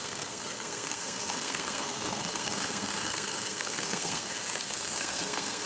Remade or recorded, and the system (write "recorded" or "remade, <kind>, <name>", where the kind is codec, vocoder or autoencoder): remade, codec, SNAC